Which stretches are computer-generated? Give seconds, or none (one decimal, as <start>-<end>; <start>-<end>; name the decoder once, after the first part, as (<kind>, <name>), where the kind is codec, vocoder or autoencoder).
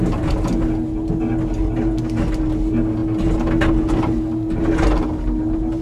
none